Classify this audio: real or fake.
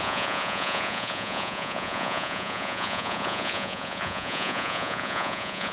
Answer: fake